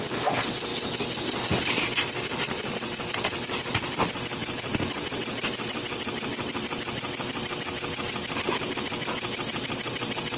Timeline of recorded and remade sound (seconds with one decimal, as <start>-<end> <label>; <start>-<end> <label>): 0.0-10.4 recorded